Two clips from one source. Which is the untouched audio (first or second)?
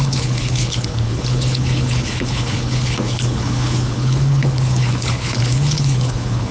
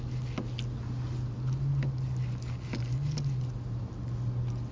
second